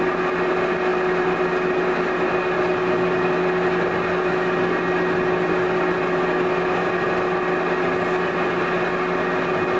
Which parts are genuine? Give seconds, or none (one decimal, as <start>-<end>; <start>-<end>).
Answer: 0.0-9.8